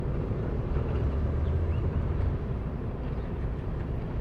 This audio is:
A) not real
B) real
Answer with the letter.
A